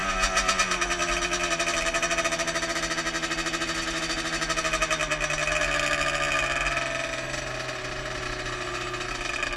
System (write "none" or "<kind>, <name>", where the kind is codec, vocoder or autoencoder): none